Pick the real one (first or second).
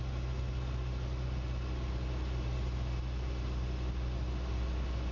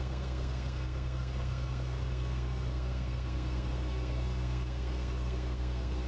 first